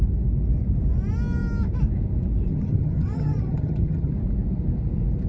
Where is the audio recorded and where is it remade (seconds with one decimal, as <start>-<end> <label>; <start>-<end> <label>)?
0.0-2.5 recorded; 2.5-4.1 remade; 4.1-5.3 recorded